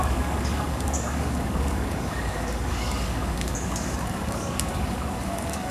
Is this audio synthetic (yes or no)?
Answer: yes